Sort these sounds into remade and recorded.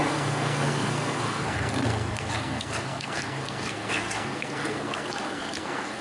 remade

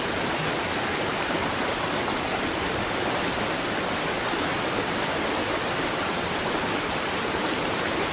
remade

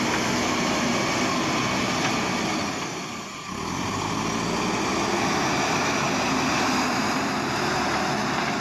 recorded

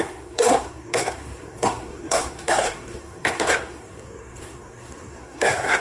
remade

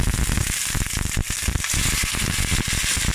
recorded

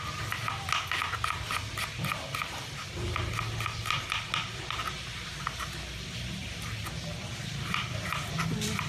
recorded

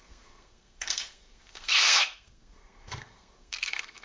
remade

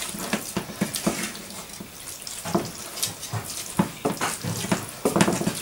recorded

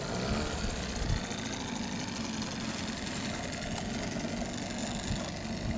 recorded